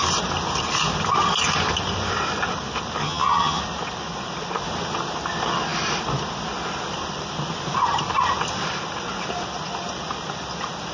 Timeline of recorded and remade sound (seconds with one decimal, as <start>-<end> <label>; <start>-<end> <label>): 0.0-3.0 recorded; 3.0-3.6 remade; 3.6-10.9 recorded